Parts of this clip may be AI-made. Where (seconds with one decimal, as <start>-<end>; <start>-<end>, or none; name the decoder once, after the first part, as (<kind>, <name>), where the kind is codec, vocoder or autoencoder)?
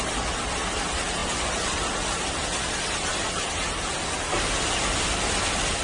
none